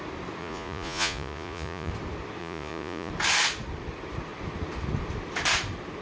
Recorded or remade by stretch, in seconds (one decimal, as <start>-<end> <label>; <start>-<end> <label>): 0.0-0.4 recorded; 0.4-1.9 remade; 1.9-2.4 recorded; 2.4-3.1 remade; 3.1-6.0 recorded